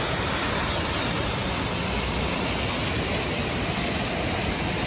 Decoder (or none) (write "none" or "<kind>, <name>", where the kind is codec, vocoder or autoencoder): none